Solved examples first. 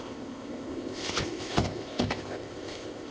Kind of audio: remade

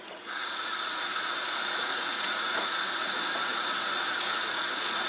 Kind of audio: remade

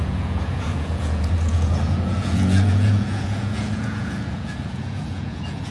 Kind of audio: remade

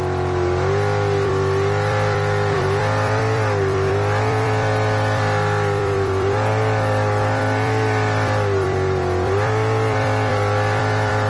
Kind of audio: remade